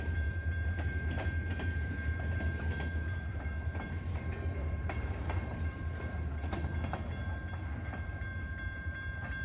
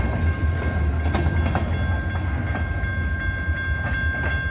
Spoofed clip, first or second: first